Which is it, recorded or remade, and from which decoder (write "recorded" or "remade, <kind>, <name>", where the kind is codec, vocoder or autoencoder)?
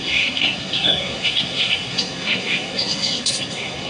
remade, codec, SNAC